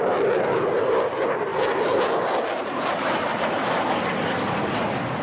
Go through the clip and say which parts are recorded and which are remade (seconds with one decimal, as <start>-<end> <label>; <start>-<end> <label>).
0.0-3.3 recorded; 3.3-3.9 remade; 3.9-5.2 recorded